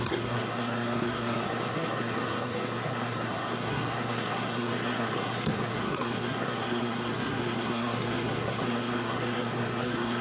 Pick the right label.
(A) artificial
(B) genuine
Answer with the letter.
A